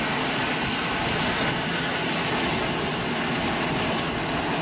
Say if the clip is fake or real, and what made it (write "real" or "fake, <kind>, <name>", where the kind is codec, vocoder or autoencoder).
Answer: real